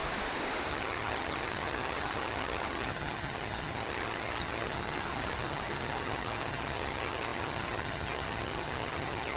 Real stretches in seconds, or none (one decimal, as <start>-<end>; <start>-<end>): 0.0-0.7